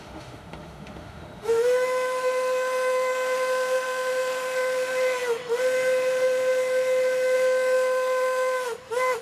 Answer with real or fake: fake